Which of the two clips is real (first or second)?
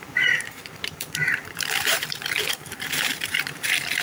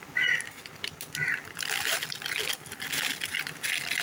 second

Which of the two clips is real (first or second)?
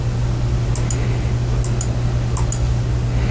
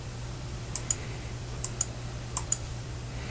first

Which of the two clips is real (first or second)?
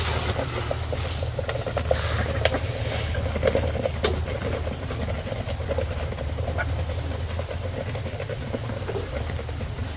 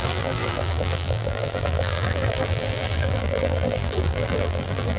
first